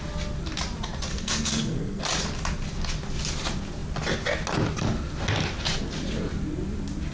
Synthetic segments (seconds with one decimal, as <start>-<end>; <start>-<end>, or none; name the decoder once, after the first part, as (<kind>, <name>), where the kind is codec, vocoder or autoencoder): 1.1-2.0 (codec, SNAC)